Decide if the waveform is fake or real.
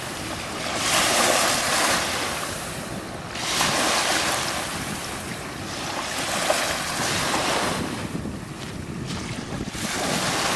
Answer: real